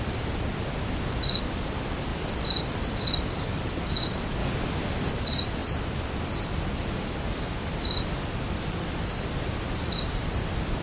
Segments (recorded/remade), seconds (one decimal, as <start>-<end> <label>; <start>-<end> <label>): 0.0-2.1 remade; 2.1-2.8 recorded; 2.8-4.4 remade; 4.4-5.1 recorded; 5.1-5.6 remade; 5.6-8.6 recorded; 8.6-10.8 remade